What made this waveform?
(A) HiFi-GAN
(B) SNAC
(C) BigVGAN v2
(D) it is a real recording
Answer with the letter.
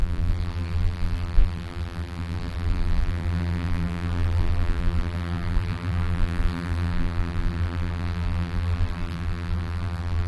C